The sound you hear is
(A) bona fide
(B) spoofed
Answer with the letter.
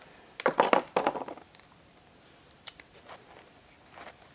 A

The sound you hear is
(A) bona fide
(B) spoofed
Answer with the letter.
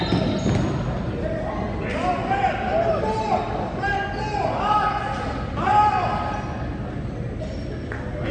A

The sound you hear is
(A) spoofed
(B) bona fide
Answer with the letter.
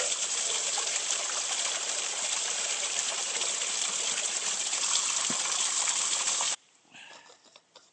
A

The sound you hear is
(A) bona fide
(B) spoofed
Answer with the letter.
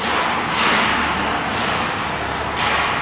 A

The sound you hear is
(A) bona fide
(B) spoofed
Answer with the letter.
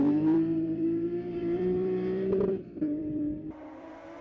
B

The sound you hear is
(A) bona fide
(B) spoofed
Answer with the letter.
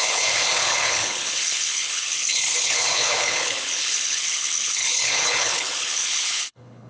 B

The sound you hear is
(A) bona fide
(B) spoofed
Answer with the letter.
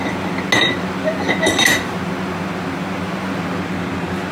A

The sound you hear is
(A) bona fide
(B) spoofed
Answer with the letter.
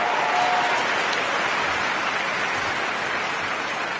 A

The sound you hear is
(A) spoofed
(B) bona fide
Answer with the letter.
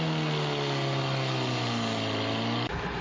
B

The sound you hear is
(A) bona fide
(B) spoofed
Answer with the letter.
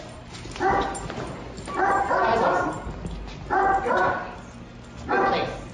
A